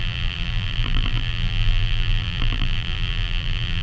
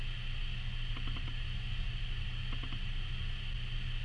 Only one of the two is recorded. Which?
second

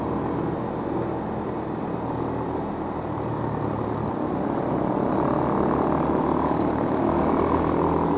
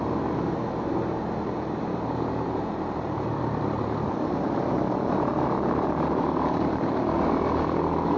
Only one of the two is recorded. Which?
first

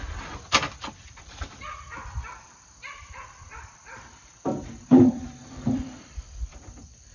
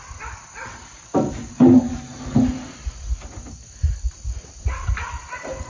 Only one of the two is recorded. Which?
second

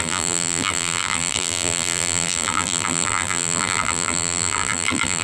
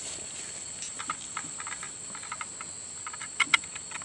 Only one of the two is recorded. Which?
second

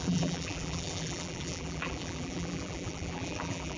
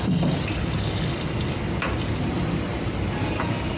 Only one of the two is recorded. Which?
second